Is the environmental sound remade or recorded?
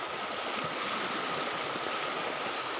recorded